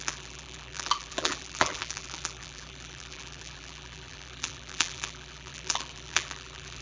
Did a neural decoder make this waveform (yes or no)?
yes